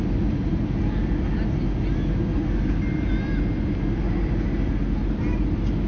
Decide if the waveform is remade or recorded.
recorded